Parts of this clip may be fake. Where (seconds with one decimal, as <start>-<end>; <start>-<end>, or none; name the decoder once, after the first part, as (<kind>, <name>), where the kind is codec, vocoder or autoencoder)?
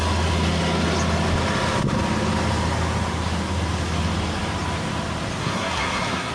5.4-6.3 (codec, SNAC)